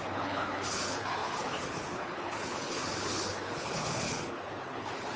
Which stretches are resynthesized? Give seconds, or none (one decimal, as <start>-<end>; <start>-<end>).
0.0-5.2